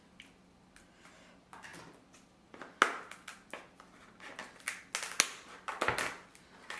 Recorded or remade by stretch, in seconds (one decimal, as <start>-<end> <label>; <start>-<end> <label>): 0.0-6.8 recorded